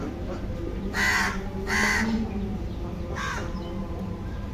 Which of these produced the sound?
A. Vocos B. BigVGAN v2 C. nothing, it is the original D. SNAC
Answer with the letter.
C